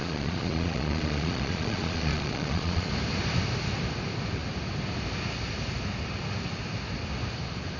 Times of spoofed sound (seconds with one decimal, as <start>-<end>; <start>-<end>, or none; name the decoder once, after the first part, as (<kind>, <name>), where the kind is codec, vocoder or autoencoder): 0.0-2.9 (vocoder, Vocos)